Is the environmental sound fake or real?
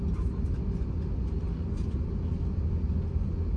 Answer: real